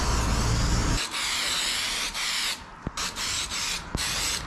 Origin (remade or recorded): recorded